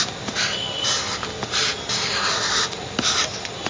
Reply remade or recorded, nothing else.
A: recorded